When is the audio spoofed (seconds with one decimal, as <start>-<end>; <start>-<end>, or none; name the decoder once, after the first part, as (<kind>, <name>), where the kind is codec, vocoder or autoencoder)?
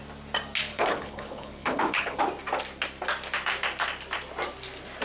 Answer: 0.7-2.2 (codec, HILCodec)